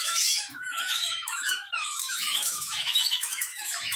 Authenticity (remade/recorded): remade